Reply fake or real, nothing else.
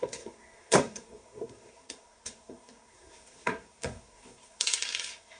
fake